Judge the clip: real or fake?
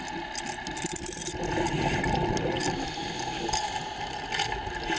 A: real